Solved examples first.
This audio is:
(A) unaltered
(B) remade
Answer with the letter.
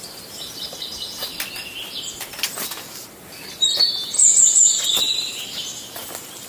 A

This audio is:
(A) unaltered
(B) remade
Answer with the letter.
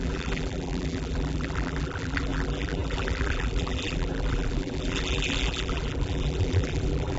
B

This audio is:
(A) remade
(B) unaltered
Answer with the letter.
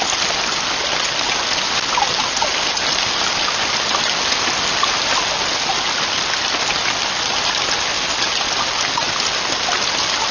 B